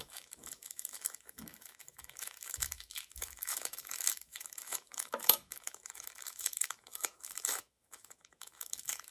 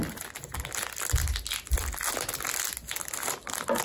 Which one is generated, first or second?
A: first